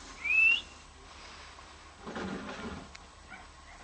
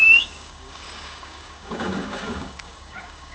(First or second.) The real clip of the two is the first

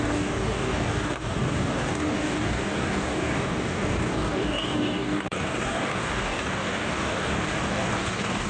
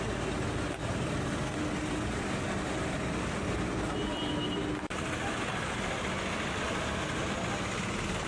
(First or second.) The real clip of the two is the second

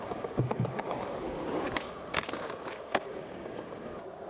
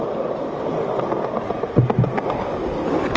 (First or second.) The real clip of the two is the second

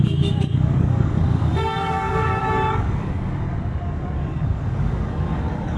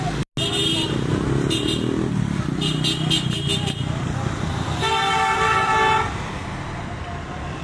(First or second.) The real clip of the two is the second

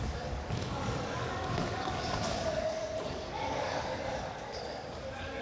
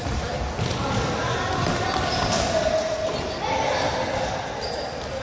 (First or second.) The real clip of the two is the second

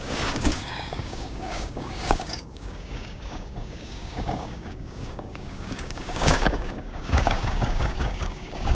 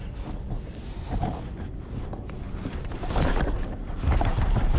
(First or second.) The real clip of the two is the second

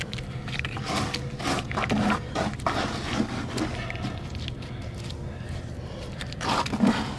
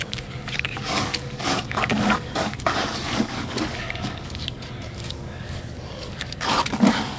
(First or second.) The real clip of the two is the first